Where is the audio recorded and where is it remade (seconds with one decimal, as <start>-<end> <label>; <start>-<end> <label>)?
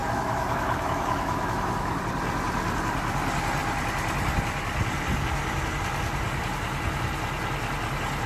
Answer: 0.0-2.0 remade; 2.0-8.3 recorded